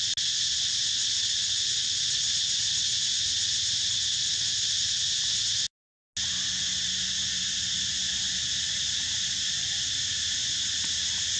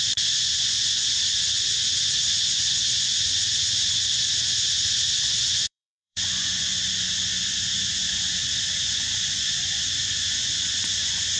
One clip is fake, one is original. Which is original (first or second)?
first